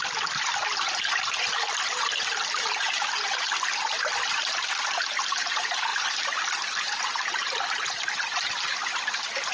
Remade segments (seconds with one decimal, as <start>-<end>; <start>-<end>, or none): none